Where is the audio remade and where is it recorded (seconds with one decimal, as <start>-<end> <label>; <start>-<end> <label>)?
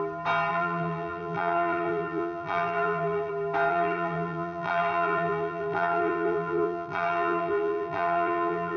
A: 0.0-0.5 recorded; 0.5-3.3 remade; 3.3-3.7 recorded; 3.7-8.8 remade